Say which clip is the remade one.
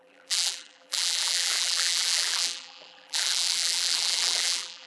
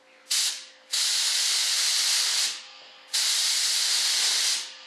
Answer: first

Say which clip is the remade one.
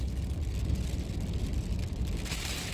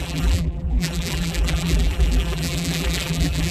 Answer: second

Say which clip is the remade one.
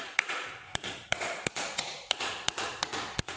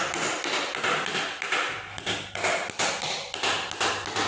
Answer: first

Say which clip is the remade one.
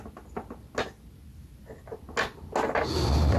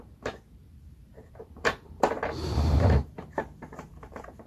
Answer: second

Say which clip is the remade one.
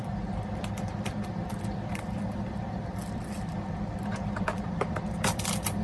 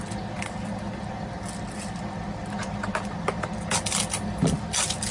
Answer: first